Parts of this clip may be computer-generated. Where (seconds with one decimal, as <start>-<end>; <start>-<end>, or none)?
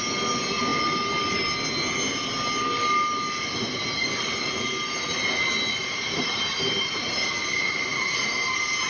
5.8-7.1